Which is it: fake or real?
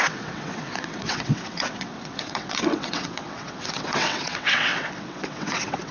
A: fake